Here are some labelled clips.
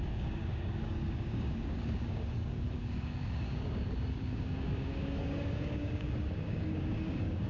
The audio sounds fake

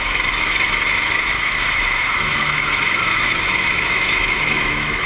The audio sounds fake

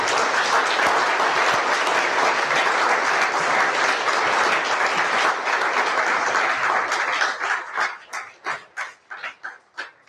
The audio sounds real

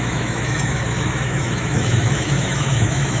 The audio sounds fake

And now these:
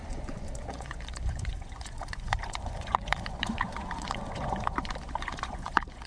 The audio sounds fake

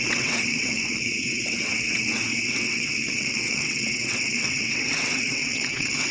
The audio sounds fake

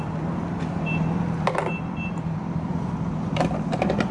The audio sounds real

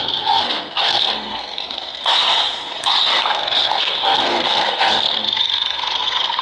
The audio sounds fake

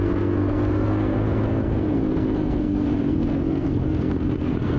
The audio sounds fake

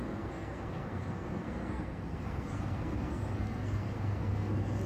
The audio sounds fake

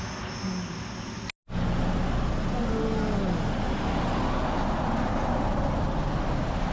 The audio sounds real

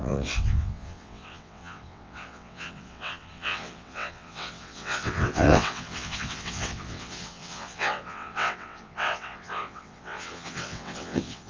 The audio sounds fake